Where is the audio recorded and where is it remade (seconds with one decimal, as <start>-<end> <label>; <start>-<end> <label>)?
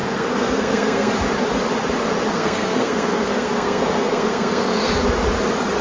0.0-1.1 remade; 1.1-2.3 recorded; 2.3-4.9 remade; 4.9-5.8 recorded